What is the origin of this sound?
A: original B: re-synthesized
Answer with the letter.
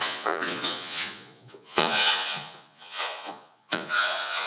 B